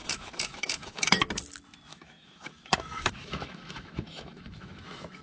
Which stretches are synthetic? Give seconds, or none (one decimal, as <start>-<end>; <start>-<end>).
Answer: 0.0-1.2; 1.9-5.2